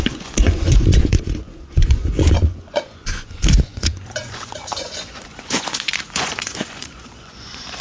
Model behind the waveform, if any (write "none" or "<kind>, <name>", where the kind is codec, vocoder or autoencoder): vocoder, Vocos